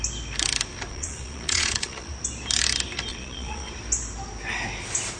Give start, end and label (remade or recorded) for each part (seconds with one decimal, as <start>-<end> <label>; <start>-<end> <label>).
0.0-0.9 recorded; 0.9-2.1 remade; 2.1-3.1 recorded; 3.1-3.7 remade; 3.7-5.2 recorded

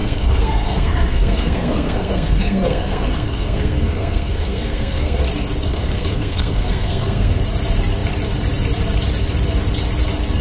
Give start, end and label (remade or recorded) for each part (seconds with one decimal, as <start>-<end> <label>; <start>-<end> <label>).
0.0-5.2 remade; 5.2-5.7 recorded; 5.7-7.4 remade; 7.4-10.4 recorded

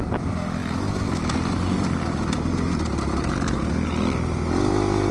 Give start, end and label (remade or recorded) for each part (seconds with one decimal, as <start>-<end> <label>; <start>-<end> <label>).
0.0-5.1 recorded

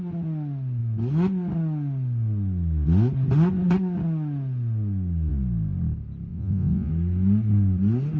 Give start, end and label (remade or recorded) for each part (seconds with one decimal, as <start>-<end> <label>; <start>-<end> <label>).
0.0-6.3 recorded; 6.3-6.9 remade; 6.9-8.2 recorded

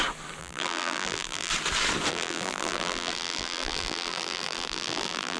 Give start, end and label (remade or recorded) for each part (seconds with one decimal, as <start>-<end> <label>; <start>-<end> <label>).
0.0-0.4 recorded; 0.4-1.5 remade; 1.5-2.1 recorded; 2.1-5.4 remade

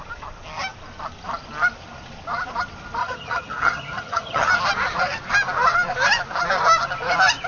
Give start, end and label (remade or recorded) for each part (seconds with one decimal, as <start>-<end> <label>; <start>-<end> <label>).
0.0-3.0 recorded; 3.0-4.5 remade; 4.5-7.5 recorded

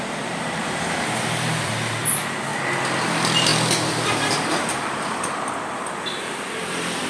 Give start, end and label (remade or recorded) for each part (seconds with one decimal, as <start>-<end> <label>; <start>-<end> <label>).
0.0-2.5 remade; 2.5-3.0 recorded; 3.0-7.1 remade

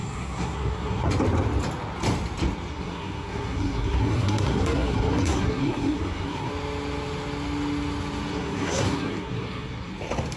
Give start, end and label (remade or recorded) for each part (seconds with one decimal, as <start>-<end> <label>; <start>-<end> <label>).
0.0-1.1 remade; 1.1-2.7 recorded; 2.7-6.5 remade; 6.5-8.3 recorded; 8.3-9.9 remade; 9.9-10.4 recorded